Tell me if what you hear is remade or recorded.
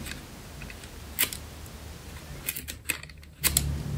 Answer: recorded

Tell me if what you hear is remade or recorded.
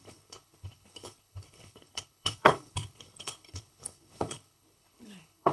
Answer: remade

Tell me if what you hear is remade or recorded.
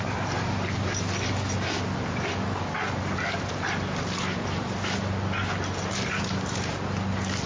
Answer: recorded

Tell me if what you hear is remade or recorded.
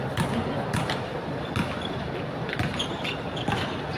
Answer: recorded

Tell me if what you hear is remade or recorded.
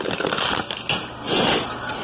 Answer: recorded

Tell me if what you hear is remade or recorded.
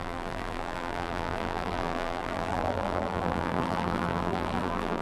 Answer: remade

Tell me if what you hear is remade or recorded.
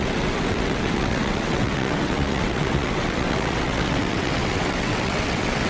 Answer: remade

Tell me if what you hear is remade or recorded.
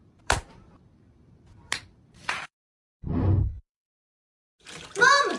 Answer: remade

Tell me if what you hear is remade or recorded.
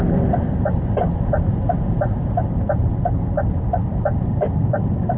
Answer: recorded